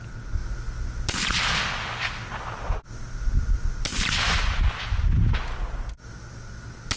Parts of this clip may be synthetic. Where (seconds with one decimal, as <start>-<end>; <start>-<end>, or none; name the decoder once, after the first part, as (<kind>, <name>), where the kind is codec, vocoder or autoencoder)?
none